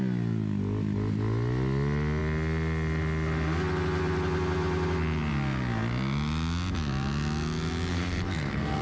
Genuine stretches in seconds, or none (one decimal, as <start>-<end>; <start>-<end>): 0.0-7.9